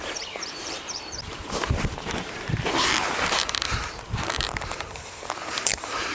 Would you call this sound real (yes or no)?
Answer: no